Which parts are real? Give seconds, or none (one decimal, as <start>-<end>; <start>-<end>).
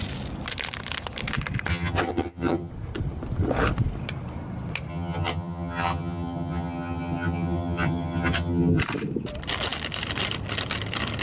0.0-1.7; 2.7-4.9; 8.8-11.2